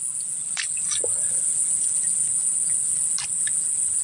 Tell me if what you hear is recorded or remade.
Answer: recorded